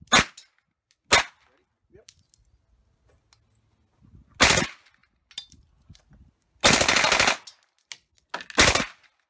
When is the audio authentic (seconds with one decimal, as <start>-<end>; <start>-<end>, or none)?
0.0-9.3